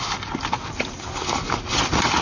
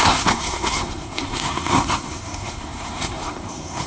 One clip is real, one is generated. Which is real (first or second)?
first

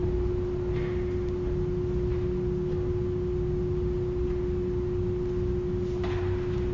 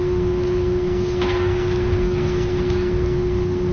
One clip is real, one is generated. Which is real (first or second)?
first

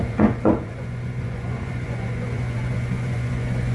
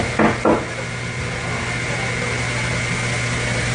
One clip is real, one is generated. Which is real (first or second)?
second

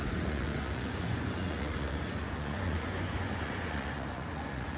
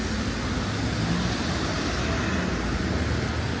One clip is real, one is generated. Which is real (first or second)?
second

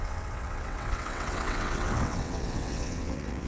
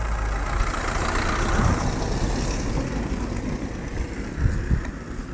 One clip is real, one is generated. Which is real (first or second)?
second